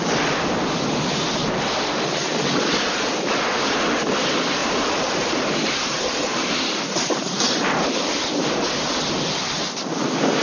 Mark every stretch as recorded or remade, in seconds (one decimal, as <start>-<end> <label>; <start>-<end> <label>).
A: 0.0-4.6 recorded; 4.6-8.4 remade; 8.4-10.4 recorded